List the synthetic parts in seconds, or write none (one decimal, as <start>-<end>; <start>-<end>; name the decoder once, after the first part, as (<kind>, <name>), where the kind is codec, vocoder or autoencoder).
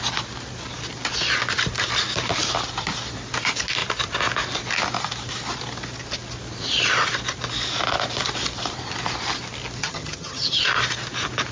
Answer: 9.8-10.6 (vocoder, HiFi-GAN)